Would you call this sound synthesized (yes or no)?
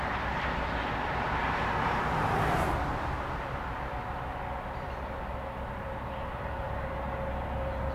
no